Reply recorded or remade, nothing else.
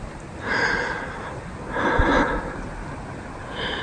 recorded